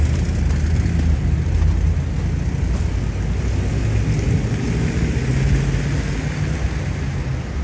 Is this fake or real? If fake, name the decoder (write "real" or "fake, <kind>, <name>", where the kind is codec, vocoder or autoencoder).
real